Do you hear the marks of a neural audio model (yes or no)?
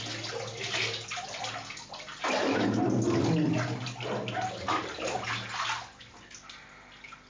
no